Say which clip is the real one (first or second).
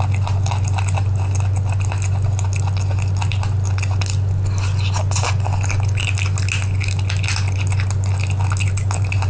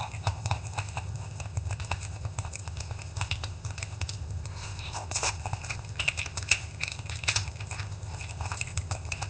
first